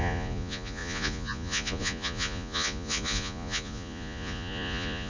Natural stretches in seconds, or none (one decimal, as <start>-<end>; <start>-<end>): none